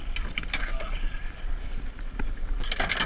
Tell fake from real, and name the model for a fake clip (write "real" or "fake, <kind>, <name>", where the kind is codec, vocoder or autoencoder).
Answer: real